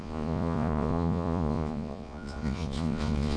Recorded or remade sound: remade